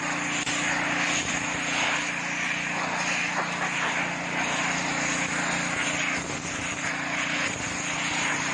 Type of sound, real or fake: real